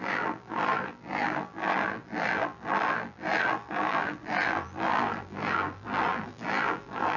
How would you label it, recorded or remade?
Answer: remade